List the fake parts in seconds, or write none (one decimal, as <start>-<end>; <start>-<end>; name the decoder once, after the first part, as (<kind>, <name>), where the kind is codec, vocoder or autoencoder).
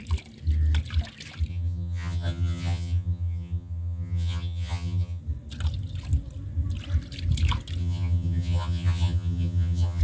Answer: 1.5-5.2 (vocoder, HiFi-GAN); 7.8-10.0